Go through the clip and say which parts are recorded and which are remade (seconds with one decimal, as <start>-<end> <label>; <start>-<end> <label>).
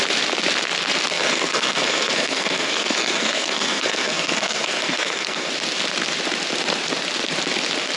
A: 0.0-1.1 recorded; 1.1-5.5 remade; 5.5-8.0 recorded